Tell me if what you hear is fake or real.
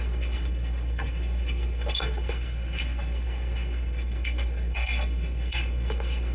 fake